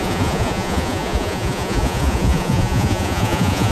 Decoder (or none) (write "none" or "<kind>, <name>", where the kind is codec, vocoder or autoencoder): vocoder, Vocos